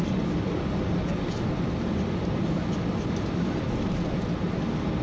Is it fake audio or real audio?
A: real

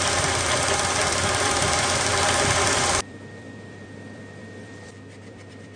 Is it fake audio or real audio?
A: fake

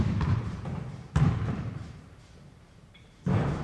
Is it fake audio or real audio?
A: fake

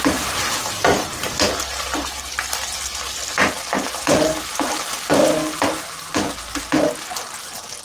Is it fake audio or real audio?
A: real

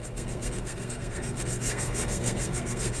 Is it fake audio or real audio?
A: fake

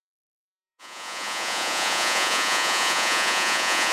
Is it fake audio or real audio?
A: fake